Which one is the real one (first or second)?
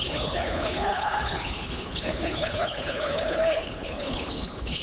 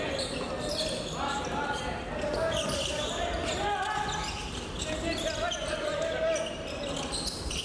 second